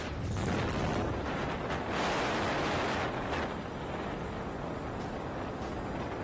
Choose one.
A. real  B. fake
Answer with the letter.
A